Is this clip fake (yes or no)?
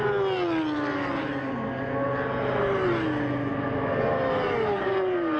no